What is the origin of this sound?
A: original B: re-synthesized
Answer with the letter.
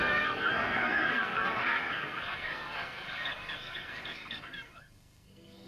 B